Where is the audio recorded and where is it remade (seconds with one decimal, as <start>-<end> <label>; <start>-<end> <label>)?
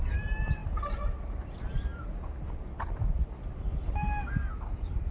0.0-5.1 recorded